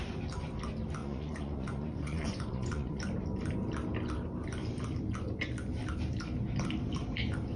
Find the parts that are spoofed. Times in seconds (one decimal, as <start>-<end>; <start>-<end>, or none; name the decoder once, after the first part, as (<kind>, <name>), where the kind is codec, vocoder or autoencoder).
1.0-3.0 (vocoder, Vocos)